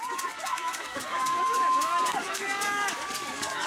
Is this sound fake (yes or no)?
yes